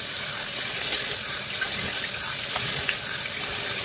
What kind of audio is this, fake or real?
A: real